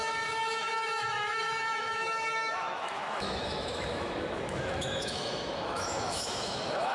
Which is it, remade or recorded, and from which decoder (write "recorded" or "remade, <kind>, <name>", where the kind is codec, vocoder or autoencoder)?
remade, autoencoder, DAC-VAE